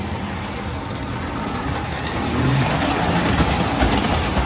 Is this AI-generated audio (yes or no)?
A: no